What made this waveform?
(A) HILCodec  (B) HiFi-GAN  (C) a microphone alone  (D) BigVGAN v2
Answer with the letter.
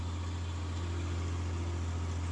C